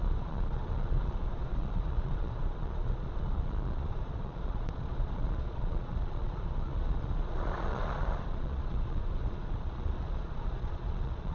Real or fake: fake